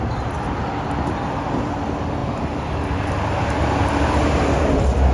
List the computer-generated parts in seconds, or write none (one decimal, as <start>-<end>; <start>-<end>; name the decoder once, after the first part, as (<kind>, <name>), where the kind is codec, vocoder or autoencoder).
none